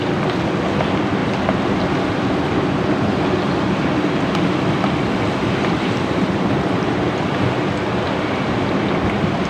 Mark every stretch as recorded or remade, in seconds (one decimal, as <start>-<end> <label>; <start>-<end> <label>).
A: 0.0-5.4 recorded; 5.4-7.1 remade; 7.1-9.5 recorded